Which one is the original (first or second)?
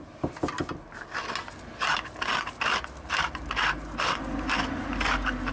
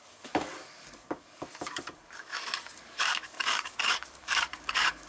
first